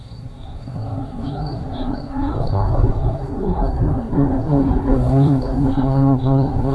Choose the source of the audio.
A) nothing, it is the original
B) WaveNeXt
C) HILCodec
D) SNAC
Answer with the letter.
D